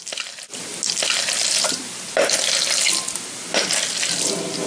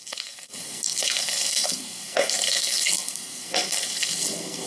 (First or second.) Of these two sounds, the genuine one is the first